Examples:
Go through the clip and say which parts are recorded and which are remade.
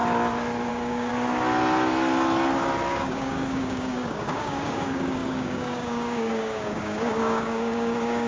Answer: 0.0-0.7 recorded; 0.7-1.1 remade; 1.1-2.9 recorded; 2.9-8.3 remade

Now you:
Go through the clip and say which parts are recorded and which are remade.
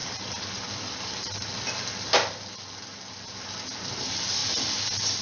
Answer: 0.0-5.2 recorded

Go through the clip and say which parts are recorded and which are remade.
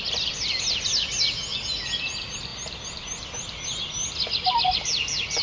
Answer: 0.0-5.4 recorded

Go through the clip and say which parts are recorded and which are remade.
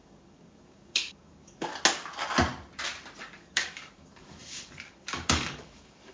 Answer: 0.0-1.7 remade; 1.7-3.2 recorded; 3.2-6.1 remade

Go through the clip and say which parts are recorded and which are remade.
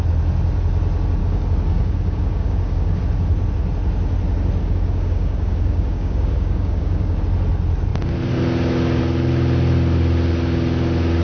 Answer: 0.0-1.2 recorded; 1.2-3.0 remade; 3.0-4.6 recorded; 4.6-7.2 remade; 7.2-11.2 recorded